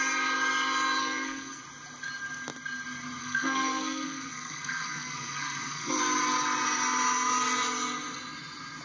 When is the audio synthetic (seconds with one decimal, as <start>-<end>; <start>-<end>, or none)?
1.0-1.6; 3.2-6.0